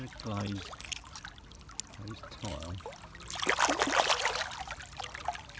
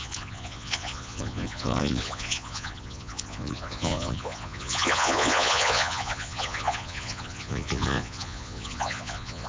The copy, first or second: second